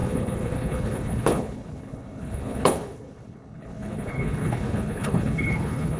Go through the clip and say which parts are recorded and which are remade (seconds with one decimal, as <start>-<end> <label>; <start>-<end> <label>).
0.0-6.0 remade